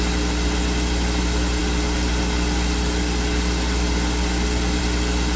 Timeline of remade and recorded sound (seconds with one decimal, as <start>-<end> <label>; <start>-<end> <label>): 0.0-5.4 recorded